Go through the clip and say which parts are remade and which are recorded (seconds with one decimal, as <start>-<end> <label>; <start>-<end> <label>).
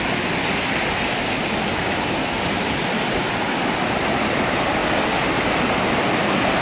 0.0-6.6 recorded